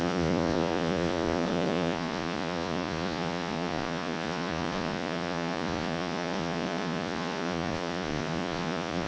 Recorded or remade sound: remade